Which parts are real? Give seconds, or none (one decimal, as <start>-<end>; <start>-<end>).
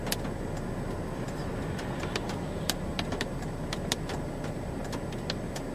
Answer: 0.0-5.7